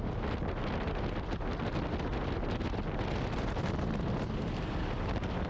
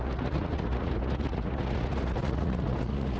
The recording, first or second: first